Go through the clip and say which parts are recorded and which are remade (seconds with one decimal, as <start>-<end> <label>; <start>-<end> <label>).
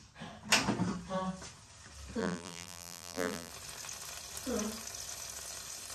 0.0-2.2 recorded; 2.2-3.5 remade; 3.5-5.9 recorded